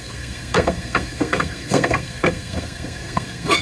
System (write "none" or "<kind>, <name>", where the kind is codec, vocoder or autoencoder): codec, SNAC